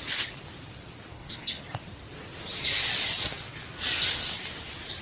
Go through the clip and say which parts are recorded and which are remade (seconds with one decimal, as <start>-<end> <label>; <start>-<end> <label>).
0.0-1.1 recorded; 1.1-1.6 remade; 1.6-5.0 recorded